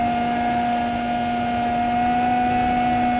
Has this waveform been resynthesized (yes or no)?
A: no